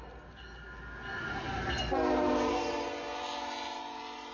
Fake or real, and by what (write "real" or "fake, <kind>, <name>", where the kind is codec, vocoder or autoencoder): real